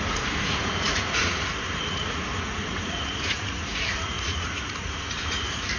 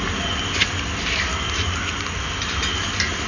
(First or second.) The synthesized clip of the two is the first